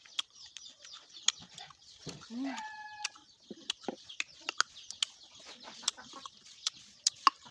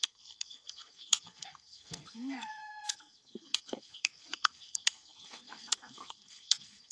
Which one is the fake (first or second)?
second